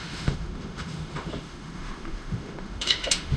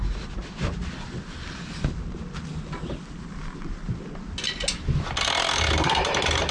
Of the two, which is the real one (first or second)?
second